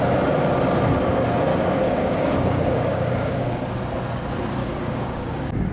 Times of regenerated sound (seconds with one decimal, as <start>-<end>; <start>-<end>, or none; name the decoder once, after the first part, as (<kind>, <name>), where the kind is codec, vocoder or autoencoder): 1.5-3.6 (codec, DAC); 4.6-5.7